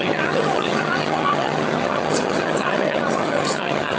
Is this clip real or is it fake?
fake